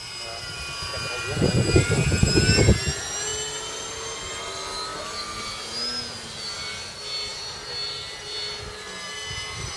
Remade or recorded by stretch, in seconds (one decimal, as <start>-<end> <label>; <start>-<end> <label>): 0.0-9.8 recorded